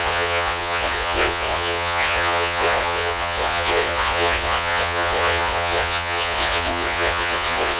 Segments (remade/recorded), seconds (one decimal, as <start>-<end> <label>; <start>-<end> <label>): 0.0-7.8 remade

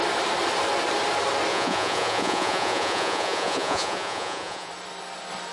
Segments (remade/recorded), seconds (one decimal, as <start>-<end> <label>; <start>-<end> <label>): 0.0-1.5 recorded; 1.5-4.7 remade; 4.7-5.5 recorded